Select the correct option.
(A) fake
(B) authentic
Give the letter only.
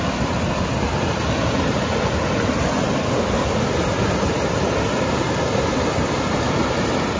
B